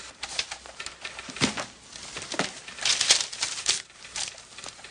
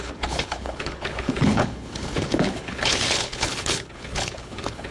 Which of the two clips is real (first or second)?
first